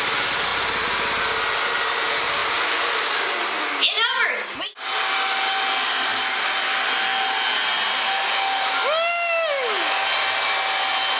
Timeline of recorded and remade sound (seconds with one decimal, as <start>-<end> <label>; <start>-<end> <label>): 0.0-11.2 recorded